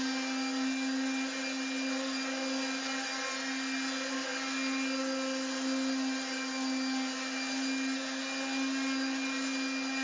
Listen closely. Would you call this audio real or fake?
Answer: real